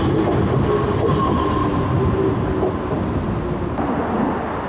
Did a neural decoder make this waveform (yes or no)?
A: no